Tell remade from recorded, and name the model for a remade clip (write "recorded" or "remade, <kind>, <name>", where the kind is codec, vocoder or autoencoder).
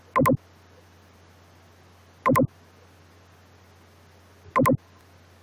recorded